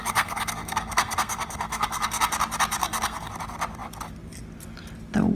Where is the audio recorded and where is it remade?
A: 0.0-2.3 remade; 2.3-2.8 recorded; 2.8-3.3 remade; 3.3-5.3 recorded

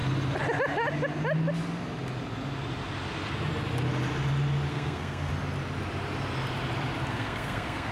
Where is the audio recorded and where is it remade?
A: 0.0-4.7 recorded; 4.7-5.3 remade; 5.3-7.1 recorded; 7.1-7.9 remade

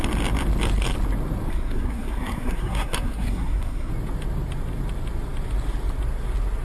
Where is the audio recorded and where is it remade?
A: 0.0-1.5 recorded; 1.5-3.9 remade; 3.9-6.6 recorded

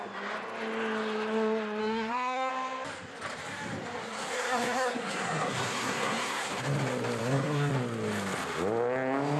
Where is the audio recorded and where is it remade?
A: 0.0-1.8 recorded; 1.8-2.5 remade; 2.5-4.0 recorded; 4.0-6.5 remade; 6.5-7.2 recorded; 7.2-7.7 remade; 7.7-9.4 recorded

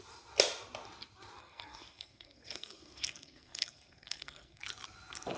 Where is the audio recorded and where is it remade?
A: 0.0-1.4 recorded; 1.4-4.6 remade; 4.6-5.4 recorded

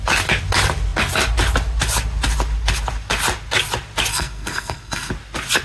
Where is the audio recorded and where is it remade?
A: 0.0-4.1 recorded; 4.1-5.1 remade; 5.1-5.6 recorded